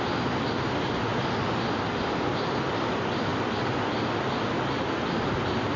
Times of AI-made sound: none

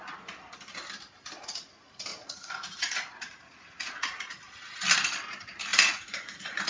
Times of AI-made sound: 2.1-4.4 (vocoder, Vocos); 5.7-6.7

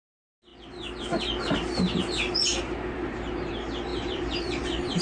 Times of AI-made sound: 2.5-3.5 (vocoder, BigVGAN v2); 3.9-5.0